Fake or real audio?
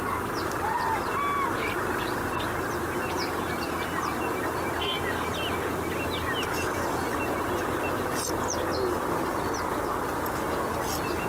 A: real